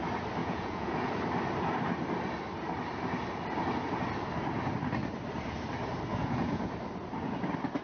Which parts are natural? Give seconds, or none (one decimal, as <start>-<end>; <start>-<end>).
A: 0.0-0.4; 1.1-6.1; 6.7-7.8